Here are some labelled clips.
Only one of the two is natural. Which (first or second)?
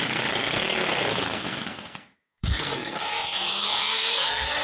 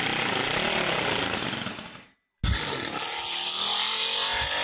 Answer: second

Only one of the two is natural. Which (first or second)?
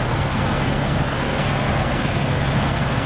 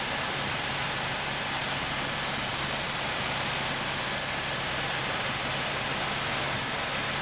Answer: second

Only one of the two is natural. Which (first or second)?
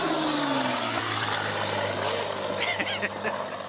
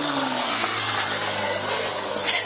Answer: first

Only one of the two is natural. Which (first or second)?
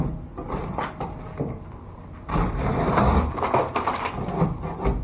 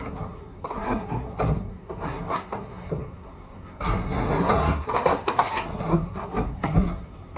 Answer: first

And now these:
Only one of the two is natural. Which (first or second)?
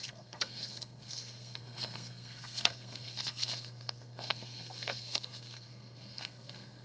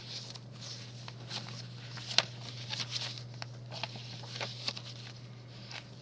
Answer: second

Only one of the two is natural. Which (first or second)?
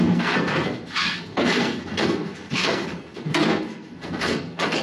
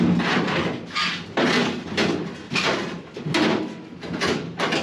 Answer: second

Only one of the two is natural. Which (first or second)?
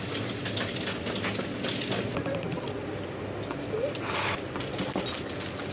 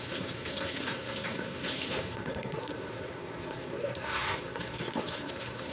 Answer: first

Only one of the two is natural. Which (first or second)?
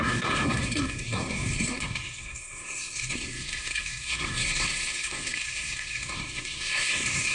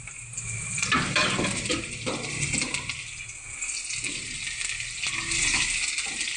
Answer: second